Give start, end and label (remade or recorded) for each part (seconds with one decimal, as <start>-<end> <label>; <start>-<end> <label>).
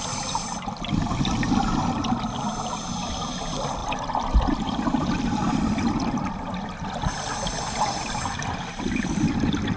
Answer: 0.0-2.5 recorded; 2.5-3.1 remade; 3.1-3.8 recorded; 3.8-7.1 remade; 7.1-9.8 recorded